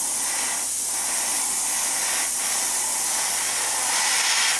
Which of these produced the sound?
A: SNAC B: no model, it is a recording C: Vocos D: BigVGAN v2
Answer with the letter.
B